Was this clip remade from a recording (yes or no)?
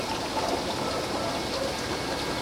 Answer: no